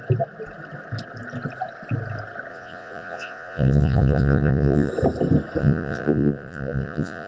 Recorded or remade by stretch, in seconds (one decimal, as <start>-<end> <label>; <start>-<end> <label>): 0.0-2.5 recorded; 2.5-4.9 remade; 4.9-5.6 recorded; 5.6-7.3 remade